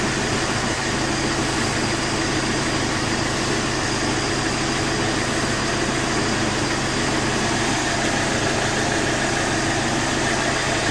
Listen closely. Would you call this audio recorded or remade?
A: recorded